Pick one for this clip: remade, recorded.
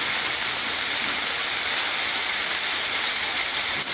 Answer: recorded